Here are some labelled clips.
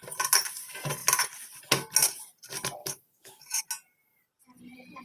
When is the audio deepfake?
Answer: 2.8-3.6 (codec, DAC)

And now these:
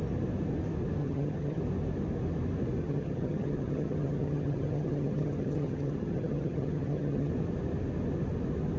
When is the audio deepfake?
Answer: 1.0-1.6 (vocoder, HiFi-GAN); 2.8-7.3

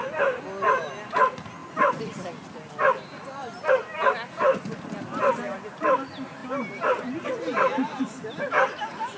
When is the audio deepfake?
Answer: none

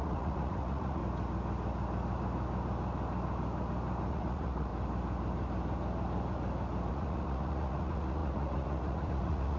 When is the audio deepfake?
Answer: 0.0-1.0 (vocoder, Vocos); 4.1-4.7; 6.9-9.6

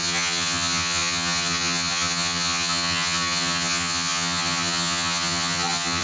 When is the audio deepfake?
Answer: 0.0-6.0 (vocoder, HiFi-GAN)

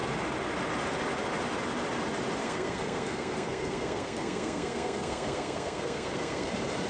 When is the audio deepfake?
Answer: 2.4-6.5 (codec, SNAC)

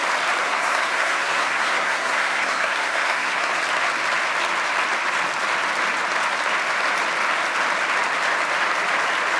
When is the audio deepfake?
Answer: 0.4-3.5 (codec, SNAC)

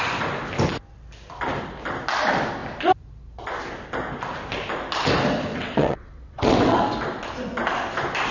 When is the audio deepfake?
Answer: 5.5-6.8 (vocoder, WaveNeXt)